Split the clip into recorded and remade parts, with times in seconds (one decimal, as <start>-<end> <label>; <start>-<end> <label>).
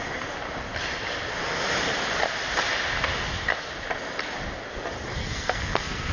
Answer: 0.0-5.2 recorded; 5.2-6.1 remade